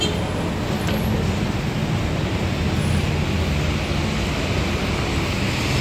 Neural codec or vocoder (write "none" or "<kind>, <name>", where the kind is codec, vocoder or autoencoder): none